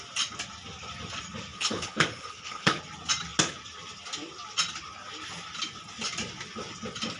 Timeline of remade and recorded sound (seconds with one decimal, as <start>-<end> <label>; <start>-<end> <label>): 0.0-1.5 recorded; 1.5-2.8 remade; 2.8-7.2 recorded